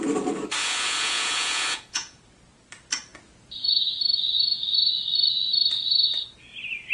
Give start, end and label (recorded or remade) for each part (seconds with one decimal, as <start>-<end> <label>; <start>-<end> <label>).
0.0-0.6 recorded; 0.6-2.2 remade; 2.2-6.9 recorded